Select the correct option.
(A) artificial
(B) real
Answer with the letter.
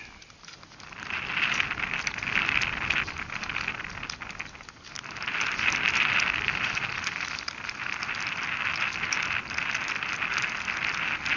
B